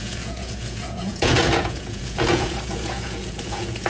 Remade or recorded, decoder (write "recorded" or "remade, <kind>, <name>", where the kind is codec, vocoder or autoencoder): remade, vocoder, Vocos